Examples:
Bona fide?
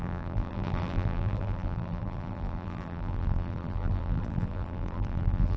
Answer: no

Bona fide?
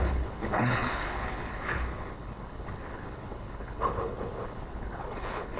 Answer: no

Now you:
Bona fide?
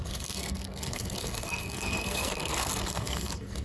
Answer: no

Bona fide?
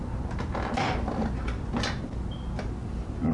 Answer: yes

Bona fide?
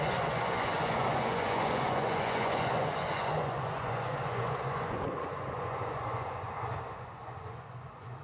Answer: no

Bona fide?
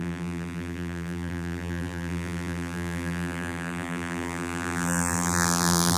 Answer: no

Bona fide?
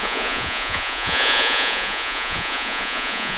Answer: no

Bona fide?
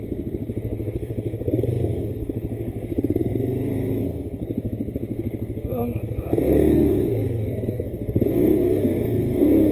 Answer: no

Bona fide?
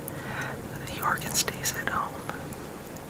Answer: yes